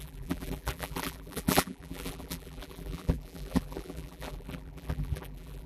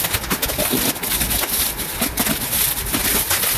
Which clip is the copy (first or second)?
first